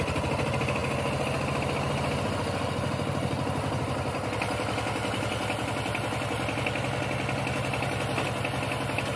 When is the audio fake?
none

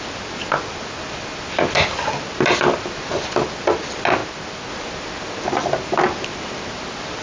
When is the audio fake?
none

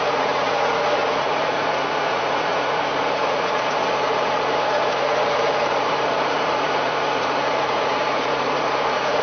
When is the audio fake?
0.0-9.2 (vocoder, Vocos)

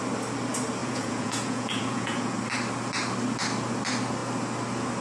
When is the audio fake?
0.8-2.3 (vocoder, Vocos)